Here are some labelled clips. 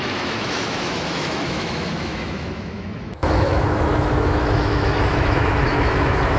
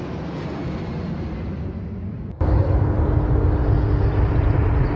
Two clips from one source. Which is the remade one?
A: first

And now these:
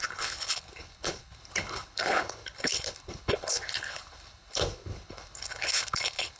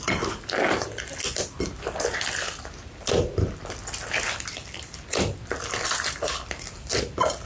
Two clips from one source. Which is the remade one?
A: first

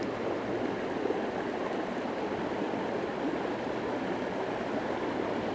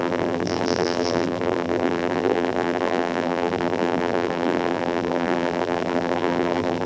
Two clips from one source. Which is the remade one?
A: second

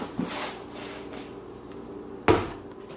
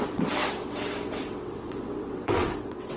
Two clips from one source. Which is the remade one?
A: second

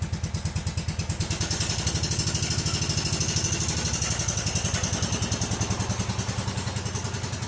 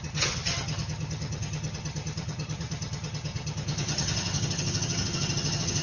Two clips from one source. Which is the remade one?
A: second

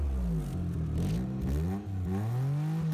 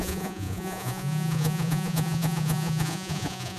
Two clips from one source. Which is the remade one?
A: second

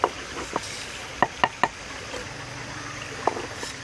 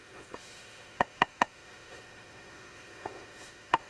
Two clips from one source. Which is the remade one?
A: second